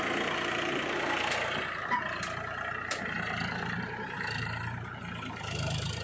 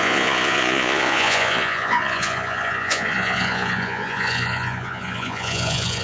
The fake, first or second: second